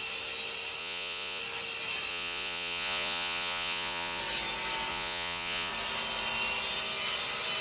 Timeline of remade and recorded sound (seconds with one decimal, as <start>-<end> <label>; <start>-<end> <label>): 0.0-0.8 recorded; 0.8-1.4 remade; 1.4-2.1 recorded; 2.1-4.2 remade; 4.2-4.9 recorded; 4.9-5.7 remade; 5.7-7.6 recorded